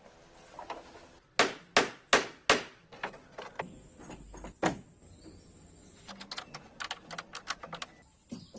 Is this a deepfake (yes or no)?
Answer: no